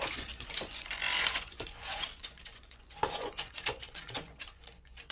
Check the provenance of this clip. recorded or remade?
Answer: remade